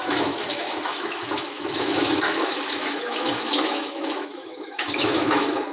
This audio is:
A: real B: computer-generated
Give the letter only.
B